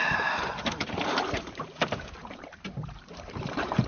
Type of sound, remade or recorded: remade